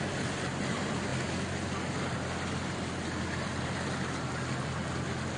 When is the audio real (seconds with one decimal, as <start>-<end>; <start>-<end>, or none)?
0.0-5.4